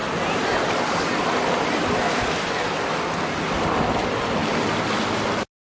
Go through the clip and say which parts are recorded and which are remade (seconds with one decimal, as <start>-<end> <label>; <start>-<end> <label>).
0.0-5.7 recorded